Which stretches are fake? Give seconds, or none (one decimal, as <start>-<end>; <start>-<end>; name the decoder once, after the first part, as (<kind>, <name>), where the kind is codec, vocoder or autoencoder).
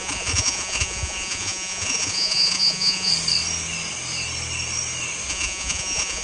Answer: 0.0-3.1 (vocoder, Vocos); 5.3-6.2